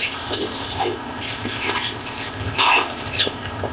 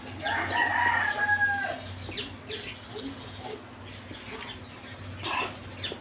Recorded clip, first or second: second